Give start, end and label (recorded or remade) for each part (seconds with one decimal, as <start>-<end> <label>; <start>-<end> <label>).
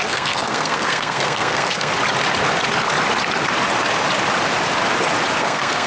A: 0.0-1.9 remade; 1.9-5.4 recorded; 5.4-5.9 remade